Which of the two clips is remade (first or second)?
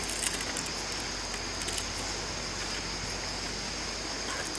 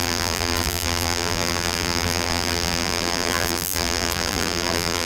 second